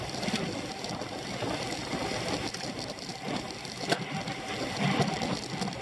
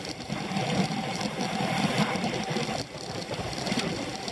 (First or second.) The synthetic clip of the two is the second